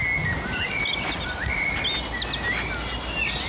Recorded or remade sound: recorded